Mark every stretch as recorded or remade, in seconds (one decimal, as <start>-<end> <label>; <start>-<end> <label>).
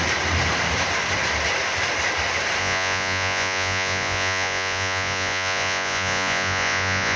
0.0-2.6 recorded; 2.6-7.2 remade